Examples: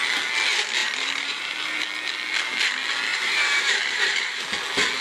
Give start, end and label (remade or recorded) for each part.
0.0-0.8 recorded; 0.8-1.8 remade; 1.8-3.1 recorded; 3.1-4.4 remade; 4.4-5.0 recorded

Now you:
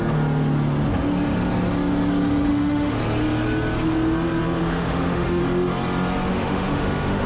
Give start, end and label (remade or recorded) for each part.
0.0-2.5 recorded; 2.5-3.0 remade; 3.0-4.6 recorded; 4.6-5.4 remade; 5.4-6.3 recorded; 6.3-7.3 remade